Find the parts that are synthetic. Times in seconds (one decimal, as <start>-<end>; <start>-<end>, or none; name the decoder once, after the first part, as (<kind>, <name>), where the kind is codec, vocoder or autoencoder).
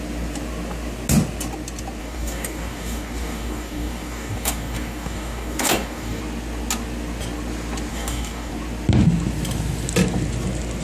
2.0-6.2 (codec, DAC); 7.9-8.5